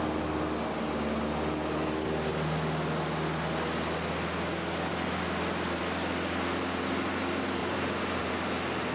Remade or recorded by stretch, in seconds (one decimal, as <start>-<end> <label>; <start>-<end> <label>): 0.0-7.6 recorded; 7.6-8.3 remade; 8.3-8.9 recorded